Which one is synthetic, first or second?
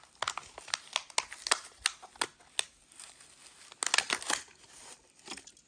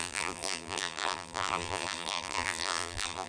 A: second